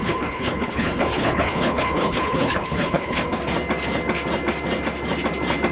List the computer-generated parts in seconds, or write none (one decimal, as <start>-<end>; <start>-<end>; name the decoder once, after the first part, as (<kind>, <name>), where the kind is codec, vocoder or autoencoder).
0.0-3.4 (codec, HILCodec)